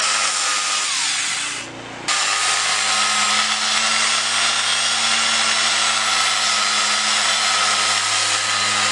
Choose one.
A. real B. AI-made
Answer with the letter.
A